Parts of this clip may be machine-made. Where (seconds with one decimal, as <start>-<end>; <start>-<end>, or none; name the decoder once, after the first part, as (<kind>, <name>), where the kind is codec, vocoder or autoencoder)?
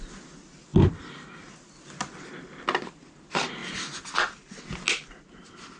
none